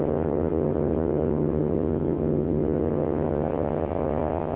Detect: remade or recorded remade